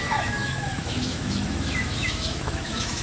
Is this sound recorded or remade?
remade